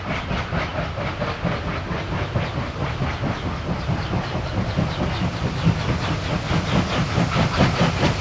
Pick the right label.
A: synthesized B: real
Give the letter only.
B